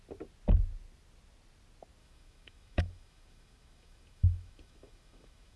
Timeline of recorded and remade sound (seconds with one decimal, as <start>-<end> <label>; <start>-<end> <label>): 0.0-2.0 recorded; 2.0-5.6 remade